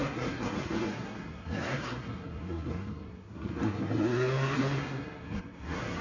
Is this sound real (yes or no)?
no